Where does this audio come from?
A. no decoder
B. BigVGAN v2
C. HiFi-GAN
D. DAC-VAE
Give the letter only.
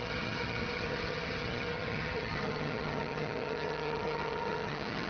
C